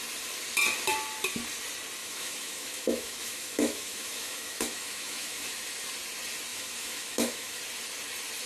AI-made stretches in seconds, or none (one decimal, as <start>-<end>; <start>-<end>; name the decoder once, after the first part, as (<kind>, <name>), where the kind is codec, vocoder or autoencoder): 2.0-5.5 (autoencoder, DAC-VAE); 6.5-7.6